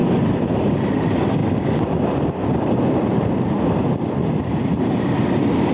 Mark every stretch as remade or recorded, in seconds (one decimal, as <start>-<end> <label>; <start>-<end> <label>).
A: 0.0-5.7 recorded